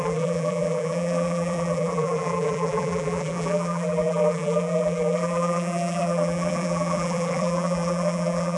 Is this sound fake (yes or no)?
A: yes